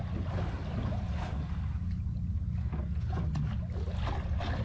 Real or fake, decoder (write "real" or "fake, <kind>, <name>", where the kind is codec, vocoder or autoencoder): real